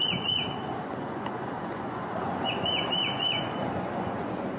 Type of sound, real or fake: fake